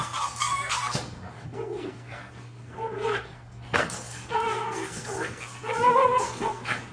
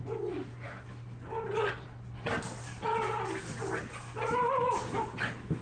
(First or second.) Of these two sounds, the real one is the second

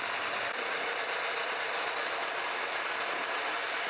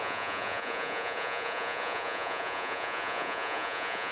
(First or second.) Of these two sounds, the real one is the first